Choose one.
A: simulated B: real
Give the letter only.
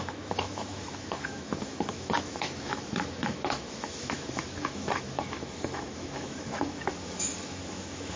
A